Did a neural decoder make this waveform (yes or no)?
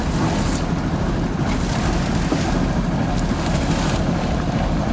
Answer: no